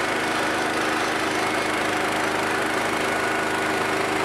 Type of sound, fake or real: real